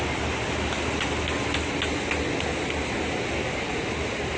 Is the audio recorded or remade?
recorded